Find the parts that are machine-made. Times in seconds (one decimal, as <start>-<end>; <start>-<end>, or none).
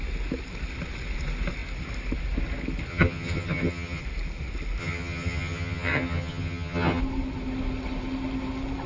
2.9-4.0; 4.8-7.0